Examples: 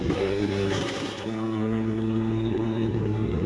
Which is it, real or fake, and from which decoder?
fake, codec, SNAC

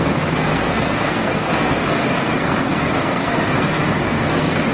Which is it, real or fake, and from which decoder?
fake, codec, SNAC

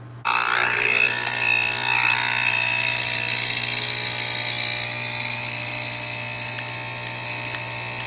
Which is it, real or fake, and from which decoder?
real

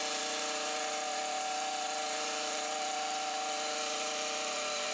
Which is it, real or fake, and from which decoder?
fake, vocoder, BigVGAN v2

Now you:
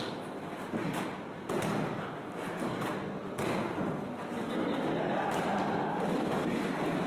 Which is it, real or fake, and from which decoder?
real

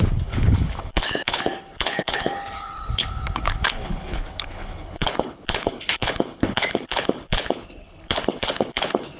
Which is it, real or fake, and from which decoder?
fake, codec, HILCodec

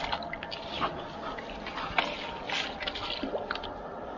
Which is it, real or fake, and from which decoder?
real